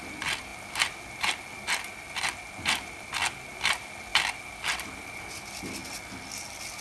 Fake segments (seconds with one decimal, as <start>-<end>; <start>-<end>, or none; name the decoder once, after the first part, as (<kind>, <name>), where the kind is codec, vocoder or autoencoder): none